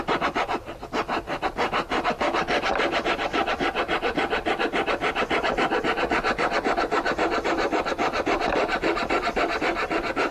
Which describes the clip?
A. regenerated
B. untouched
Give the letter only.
B